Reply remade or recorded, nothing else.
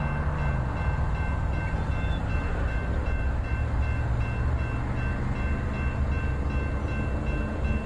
recorded